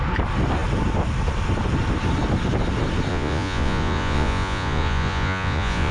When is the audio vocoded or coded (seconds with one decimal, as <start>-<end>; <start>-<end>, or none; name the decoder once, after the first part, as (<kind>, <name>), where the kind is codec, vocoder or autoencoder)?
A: 3.1-5.9 (vocoder, Vocos)